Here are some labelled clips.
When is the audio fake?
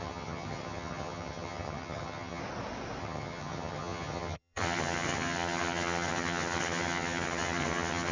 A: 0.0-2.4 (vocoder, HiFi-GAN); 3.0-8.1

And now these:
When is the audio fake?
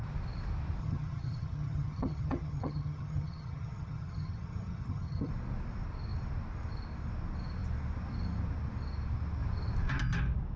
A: 0.8-5.3 (vocoder, HiFi-GAN)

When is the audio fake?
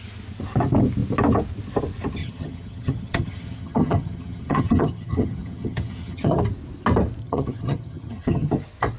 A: 2.2-6.4 (vocoder, HiFi-GAN); 7.2-8.5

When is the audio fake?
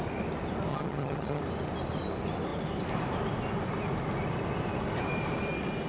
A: 0.7-1.4 (vocoder, HiFi-GAN)